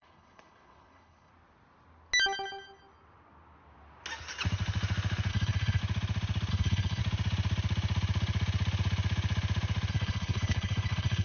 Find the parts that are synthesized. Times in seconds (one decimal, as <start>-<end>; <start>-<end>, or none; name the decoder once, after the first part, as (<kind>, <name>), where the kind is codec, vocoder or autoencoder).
0.0-1.3 (codec, HILCodec); 5.3-5.8; 6.5-7.0; 9.9-11.2